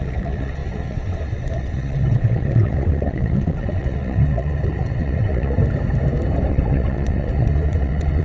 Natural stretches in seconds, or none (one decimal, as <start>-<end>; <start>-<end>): 5.6-6.5